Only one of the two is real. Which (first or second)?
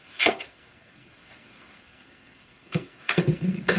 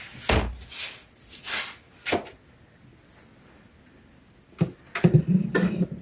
second